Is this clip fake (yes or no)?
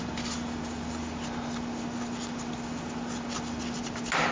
no